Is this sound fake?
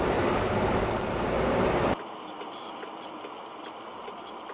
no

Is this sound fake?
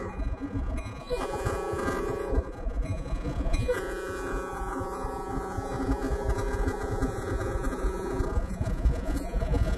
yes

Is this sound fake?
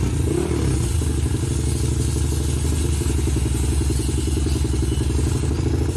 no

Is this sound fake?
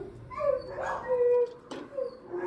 no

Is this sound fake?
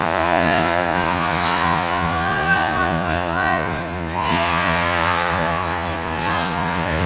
yes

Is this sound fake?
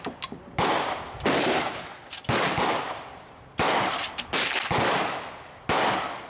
no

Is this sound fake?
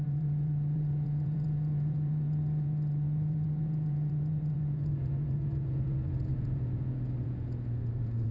yes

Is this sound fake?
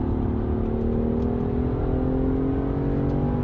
no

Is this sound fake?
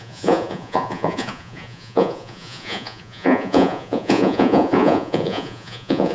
yes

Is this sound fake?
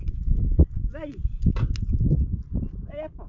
no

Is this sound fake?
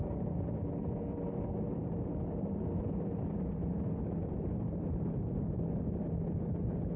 no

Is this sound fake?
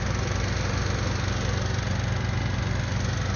no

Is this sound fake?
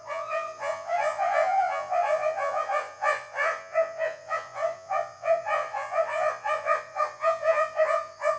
yes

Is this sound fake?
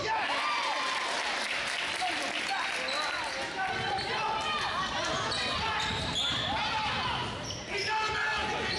no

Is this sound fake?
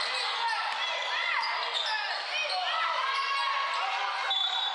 no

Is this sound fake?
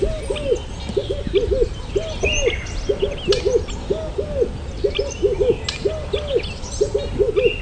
no